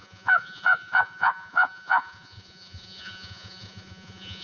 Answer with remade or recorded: remade